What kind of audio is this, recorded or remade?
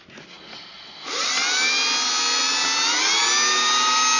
recorded